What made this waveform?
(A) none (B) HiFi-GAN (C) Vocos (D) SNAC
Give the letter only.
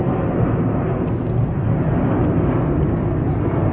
A